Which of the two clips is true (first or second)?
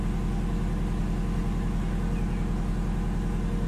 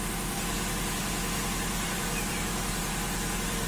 first